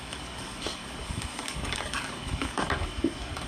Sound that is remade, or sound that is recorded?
remade